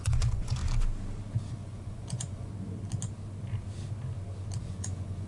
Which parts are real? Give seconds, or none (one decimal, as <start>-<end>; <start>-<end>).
0.6-1.5; 2.5-4.6